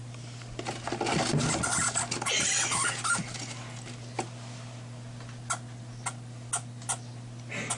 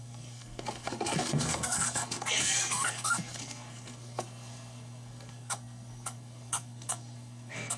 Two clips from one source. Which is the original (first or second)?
first